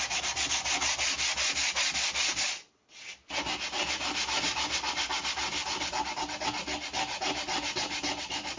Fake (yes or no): no